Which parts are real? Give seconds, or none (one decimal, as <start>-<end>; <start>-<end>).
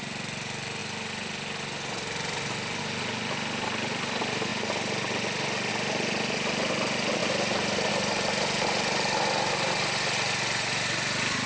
0.0-11.5